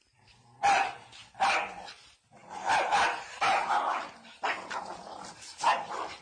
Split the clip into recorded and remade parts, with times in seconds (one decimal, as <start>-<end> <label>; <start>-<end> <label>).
0.0-1.2 recorded; 1.2-1.8 remade; 1.8-2.4 recorded; 2.4-4.4 remade; 4.4-6.2 recorded